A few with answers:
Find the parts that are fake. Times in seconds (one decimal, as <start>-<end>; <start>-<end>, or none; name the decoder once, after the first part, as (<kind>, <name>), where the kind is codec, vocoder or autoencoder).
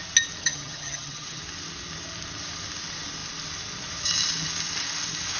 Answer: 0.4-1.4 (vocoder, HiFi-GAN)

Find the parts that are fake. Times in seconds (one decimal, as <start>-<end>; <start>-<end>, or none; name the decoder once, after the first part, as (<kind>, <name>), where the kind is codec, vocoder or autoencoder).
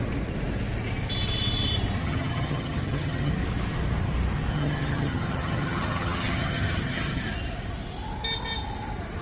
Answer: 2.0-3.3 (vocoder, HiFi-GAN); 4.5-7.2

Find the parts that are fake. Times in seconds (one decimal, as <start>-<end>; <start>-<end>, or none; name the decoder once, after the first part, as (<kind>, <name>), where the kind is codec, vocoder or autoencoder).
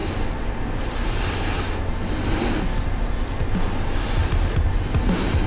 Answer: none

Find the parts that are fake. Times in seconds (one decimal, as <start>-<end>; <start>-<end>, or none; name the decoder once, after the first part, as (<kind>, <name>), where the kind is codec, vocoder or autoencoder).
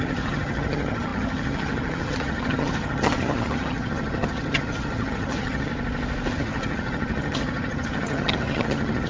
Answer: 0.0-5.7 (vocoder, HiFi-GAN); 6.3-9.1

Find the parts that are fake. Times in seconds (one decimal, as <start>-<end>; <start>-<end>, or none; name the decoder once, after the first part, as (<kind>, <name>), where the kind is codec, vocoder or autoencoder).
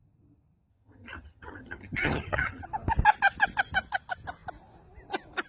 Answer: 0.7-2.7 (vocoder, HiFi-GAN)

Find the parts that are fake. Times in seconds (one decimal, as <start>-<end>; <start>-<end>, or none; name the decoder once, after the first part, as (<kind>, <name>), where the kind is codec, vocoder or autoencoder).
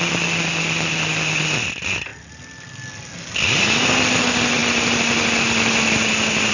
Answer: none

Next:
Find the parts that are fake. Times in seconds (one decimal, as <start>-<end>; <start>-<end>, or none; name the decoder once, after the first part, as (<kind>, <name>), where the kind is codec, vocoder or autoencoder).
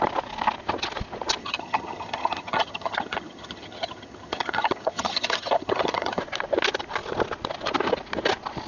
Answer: 1.4-6.2 (vocoder, HiFi-GAN)